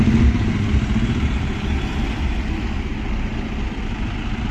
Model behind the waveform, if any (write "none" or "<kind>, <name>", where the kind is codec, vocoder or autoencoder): none